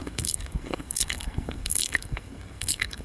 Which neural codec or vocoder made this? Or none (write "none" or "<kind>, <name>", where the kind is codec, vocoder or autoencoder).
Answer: codec, SNAC